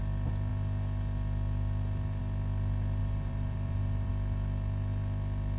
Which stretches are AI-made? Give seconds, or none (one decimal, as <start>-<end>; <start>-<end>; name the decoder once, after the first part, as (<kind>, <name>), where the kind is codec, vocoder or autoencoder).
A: 3.0-4.1 (vocoder, BigVGAN v2)